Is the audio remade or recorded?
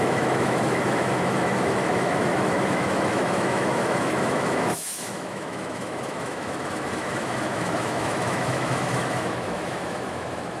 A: remade